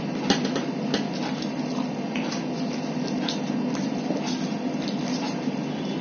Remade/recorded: recorded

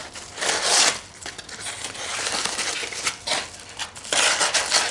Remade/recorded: recorded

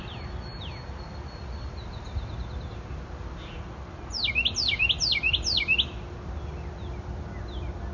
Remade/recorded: recorded